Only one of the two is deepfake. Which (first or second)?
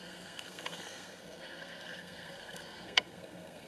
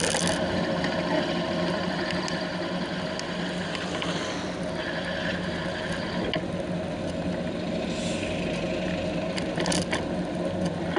first